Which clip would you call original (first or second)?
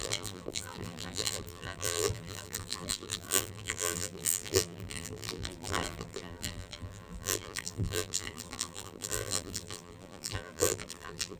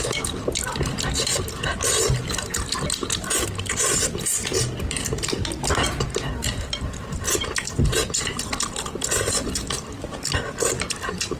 second